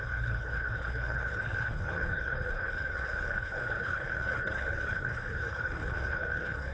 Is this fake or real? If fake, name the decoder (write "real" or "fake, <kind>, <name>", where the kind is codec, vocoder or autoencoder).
fake, codec, HILCodec